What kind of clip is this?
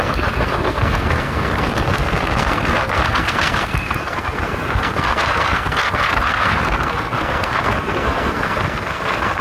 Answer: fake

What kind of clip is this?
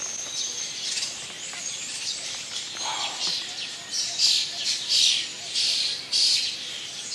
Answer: real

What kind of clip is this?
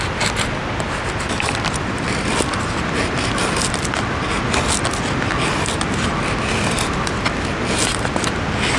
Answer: real